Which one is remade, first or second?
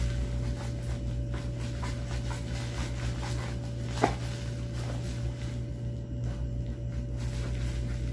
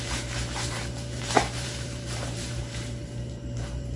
second